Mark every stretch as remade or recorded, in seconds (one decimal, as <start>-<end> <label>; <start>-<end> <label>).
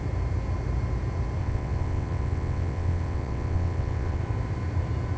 0.0-1.4 recorded; 1.4-4.2 remade; 4.2-5.2 recorded